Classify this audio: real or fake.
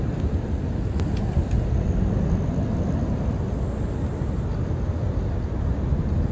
real